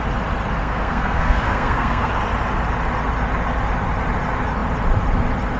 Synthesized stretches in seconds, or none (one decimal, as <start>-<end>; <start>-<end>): 0.6-2.1